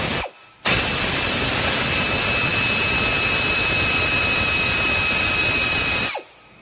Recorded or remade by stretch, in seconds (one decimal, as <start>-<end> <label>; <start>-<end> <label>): 0.0-6.6 recorded